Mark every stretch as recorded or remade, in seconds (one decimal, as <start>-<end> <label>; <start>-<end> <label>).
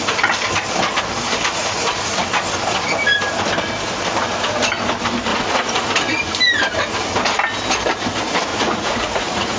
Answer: 0.0-1.6 recorded; 1.6-2.2 remade; 2.2-5.3 recorded; 5.3-5.9 remade; 5.9-8.5 recorded; 8.5-9.6 remade